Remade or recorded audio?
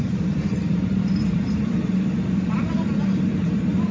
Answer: remade